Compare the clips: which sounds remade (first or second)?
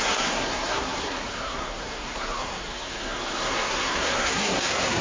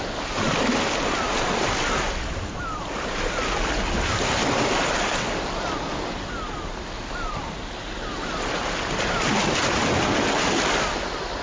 first